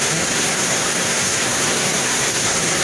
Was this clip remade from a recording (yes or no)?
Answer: yes